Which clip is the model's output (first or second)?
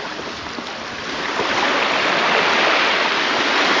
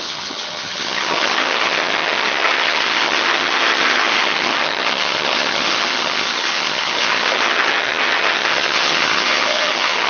second